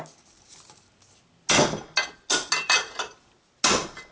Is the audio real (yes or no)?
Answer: yes